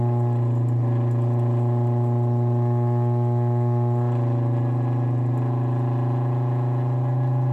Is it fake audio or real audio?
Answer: real